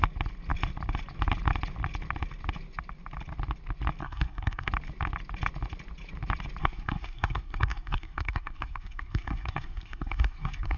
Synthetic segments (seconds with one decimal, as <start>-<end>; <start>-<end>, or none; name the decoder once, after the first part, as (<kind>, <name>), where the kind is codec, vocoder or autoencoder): 4.0-4.7 (codec, SNAC); 6.6-10.8